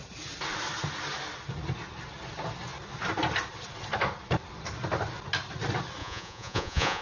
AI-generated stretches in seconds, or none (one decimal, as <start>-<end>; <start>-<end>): 6.0-7.0